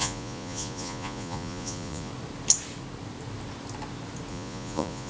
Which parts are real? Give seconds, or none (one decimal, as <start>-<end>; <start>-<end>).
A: 2.1-4.3